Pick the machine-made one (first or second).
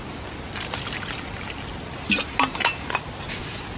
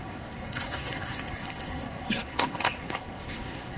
second